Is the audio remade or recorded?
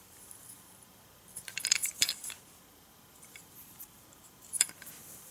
remade